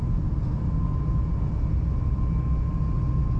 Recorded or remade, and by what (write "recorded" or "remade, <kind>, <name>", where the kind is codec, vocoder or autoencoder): recorded